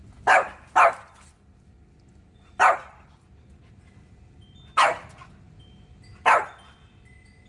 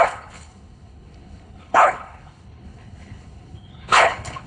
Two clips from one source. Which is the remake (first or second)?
second